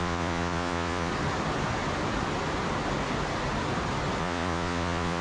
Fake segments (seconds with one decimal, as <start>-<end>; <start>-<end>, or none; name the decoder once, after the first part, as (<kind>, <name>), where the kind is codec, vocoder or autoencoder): 0.0-1.1 (vocoder, Vocos); 4.2-5.2